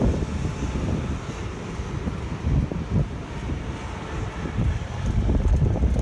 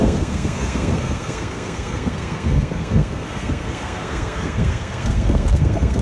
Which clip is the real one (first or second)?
first